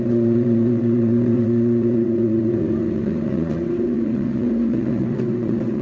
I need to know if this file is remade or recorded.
remade